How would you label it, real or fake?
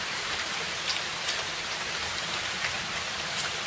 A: fake